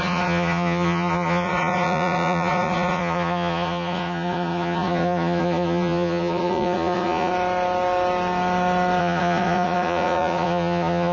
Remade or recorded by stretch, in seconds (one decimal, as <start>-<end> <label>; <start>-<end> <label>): 0.0-7.3 remade; 7.3-9.0 recorded; 9.0-11.1 remade